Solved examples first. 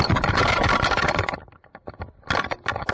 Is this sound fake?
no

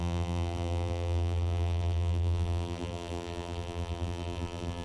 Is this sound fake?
yes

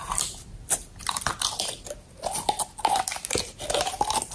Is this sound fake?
no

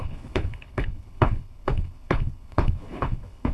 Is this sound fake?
yes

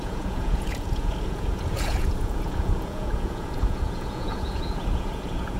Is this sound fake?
yes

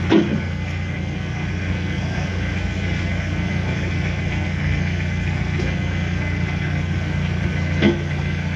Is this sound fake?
yes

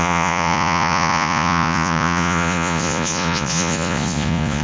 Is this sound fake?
yes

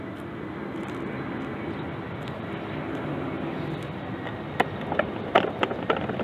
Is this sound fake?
no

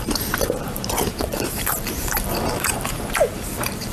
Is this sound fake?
yes